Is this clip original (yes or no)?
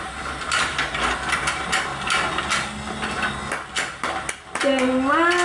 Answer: yes